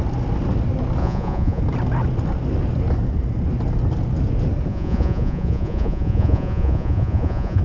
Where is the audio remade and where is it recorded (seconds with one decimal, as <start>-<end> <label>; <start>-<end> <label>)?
0.0-1.0 recorded; 1.0-1.6 remade; 1.6-4.7 recorded; 4.7-7.6 remade